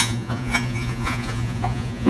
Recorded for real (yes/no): no